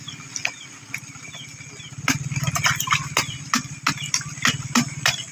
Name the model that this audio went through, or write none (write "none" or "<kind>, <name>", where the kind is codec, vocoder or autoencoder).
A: none